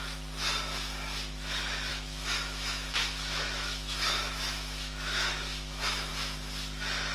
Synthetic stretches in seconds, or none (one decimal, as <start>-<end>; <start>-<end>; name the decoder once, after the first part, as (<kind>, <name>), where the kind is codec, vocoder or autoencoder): 1.9-6.1 (autoencoder, DAC-VAE)